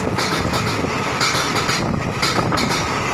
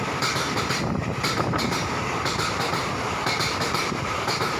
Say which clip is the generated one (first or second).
second